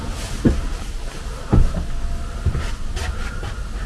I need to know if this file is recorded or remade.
recorded